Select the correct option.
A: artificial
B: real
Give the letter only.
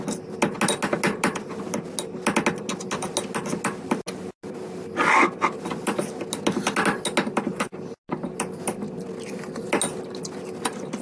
B